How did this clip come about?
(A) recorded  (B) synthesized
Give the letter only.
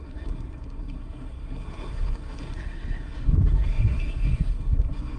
B